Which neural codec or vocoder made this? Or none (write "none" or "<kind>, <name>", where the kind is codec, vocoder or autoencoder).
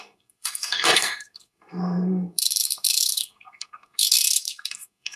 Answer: codec, SNAC